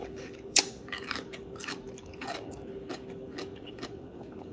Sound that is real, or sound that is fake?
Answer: fake